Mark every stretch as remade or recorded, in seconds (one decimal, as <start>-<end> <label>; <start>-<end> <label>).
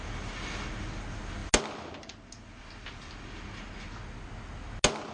0.0-5.1 recorded